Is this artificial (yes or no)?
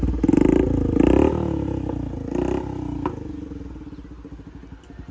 no